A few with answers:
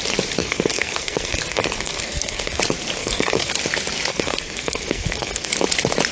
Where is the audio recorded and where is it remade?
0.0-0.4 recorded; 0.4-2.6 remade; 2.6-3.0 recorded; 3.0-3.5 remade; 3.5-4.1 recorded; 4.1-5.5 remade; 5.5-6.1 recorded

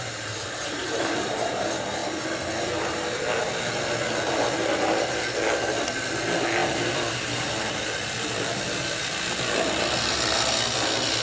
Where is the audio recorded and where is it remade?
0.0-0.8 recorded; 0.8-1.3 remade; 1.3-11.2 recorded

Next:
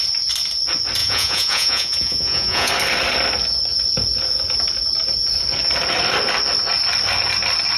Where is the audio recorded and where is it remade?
0.0-1.0 recorded; 1.0-2.7 remade; 2.7-7.8 recorded